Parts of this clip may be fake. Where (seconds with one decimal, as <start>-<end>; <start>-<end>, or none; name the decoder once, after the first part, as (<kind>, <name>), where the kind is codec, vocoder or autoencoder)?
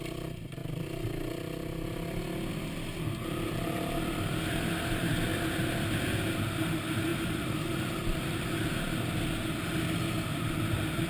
7.1-8.5 (vocoder, BigVGAN v2)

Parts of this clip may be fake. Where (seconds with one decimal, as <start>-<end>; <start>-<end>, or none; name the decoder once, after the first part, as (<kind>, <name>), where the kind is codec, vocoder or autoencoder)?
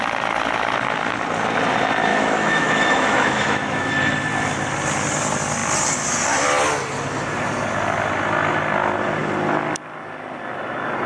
2.1-3.9 (autoencoder, DAC-VAE)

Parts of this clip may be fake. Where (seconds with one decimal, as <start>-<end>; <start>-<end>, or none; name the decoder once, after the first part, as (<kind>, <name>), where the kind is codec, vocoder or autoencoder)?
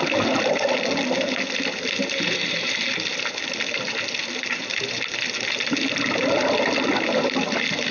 none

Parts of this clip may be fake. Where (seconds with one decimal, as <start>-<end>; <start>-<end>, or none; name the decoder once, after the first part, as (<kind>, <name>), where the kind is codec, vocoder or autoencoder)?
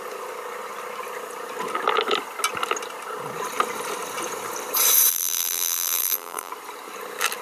5.1-6.5 (vocoder, BigVGAN v2)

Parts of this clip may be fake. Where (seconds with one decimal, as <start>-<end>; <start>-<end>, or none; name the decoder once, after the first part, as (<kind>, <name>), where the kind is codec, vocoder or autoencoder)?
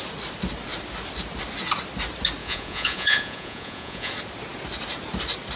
2.4-4.1 (vocoder, Vocos)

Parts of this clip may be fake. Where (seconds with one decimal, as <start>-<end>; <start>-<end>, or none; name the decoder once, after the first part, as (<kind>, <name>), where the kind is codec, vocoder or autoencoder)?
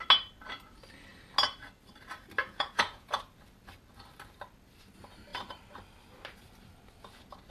2.4-3.2 (vocoder, Vocos)